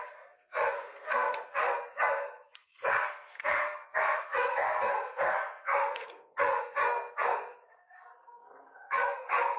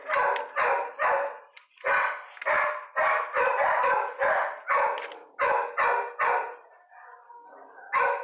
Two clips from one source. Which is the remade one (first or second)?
first